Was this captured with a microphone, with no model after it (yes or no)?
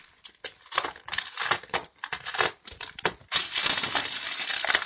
yes